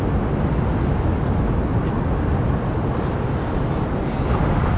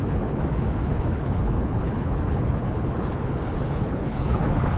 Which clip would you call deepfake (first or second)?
second